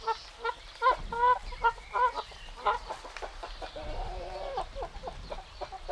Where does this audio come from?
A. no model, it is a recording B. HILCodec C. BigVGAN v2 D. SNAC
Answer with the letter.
A